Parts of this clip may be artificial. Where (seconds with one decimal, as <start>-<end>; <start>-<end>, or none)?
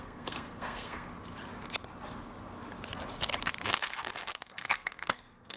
0.0-1.1; 3.7-5.6